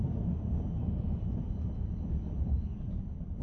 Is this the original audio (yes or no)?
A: no